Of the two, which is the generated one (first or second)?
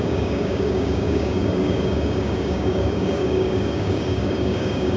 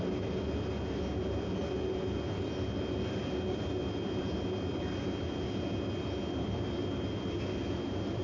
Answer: first